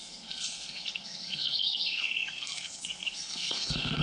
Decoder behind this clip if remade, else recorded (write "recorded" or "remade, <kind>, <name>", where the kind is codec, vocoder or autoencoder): remade, codec, SNAC